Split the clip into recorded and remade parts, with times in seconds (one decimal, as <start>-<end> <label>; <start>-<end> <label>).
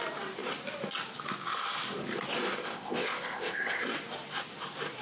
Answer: 0.0-2.6 recorded; 2.6-3.8 remade; 3.8-5.0 recorded